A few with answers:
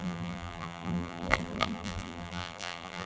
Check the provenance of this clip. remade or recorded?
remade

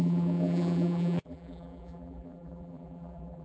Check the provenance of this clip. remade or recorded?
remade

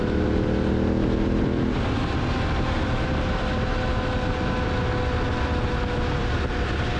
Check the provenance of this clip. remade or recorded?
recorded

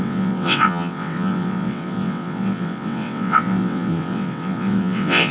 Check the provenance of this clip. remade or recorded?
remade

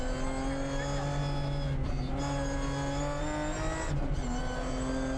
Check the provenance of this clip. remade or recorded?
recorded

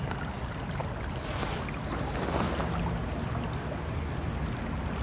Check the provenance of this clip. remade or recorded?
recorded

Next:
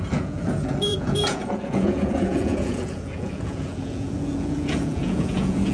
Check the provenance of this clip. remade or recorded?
remade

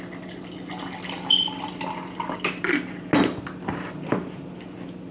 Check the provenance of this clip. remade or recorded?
recorded